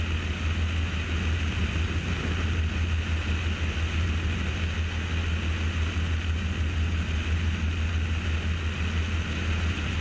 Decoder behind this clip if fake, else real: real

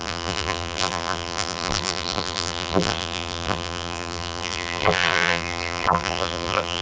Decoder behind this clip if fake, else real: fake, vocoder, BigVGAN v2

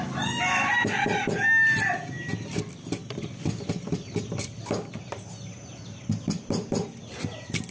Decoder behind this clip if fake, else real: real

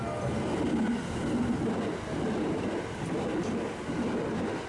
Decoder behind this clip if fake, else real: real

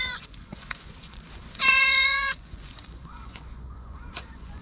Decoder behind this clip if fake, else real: fake, vocoder, Vocos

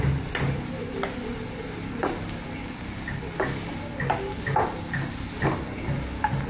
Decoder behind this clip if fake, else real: real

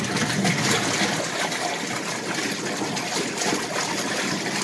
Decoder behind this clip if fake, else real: real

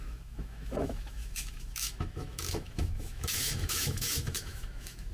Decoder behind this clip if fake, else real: fake, autoencoder, DAC-VAE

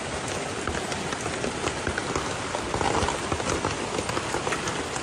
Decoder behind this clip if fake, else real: real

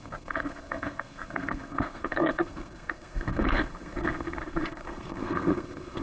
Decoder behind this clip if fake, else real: fake, codec, SNAC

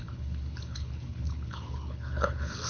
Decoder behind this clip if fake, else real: fake, codec, HILCodec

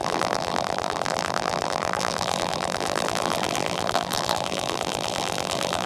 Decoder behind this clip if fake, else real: fake, vocoder, BigVGAN v2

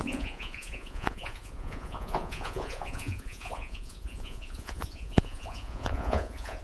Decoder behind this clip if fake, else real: fake, vocoder, Vocos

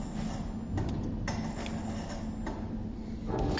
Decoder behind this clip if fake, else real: real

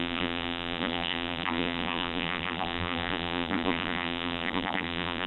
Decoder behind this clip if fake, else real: fake, vocoder, BigVGAN v2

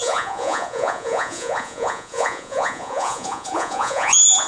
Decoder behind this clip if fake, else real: fake, vocoder, Vocos